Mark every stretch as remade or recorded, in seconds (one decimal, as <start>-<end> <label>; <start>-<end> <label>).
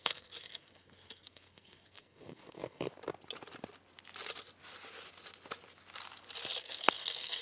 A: 0.0-2.9 remade; 2.9-6.6 recorded; 6.6-7.4 remade